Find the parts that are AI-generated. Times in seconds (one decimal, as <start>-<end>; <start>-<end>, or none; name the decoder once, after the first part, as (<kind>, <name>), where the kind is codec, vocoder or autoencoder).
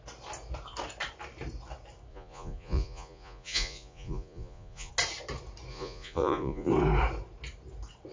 2.1-4.9 (vocoder, Vocos); 5.7-6.7